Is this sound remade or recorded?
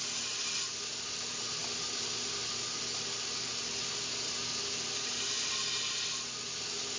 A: recorded